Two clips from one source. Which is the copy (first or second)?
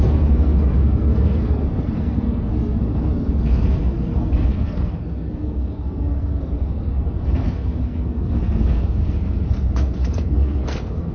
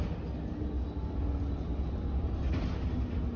first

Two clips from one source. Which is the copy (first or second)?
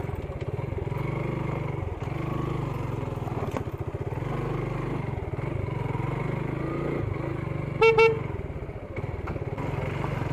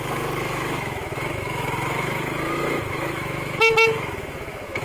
second